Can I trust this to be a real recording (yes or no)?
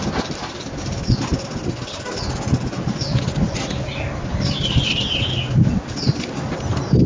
yes